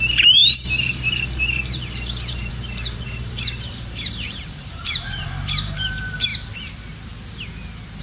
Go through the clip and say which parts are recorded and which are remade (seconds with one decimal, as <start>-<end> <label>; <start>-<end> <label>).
0.0-6.3 remade; 6.3-8.0 recorded